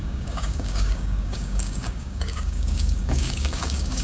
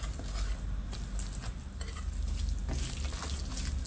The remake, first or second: first